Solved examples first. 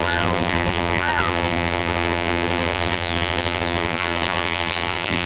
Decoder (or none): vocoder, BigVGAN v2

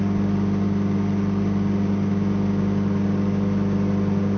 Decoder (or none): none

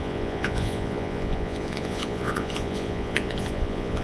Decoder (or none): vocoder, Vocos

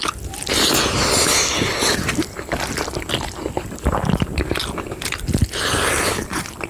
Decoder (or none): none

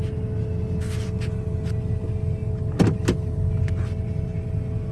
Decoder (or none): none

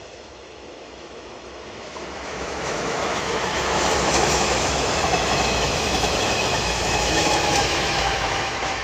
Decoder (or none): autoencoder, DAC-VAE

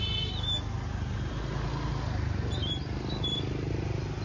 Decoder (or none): none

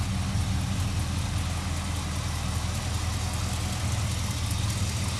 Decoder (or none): none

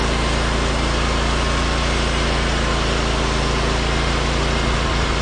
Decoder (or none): none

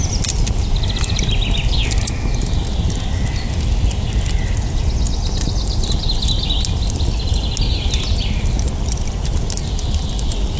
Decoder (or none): none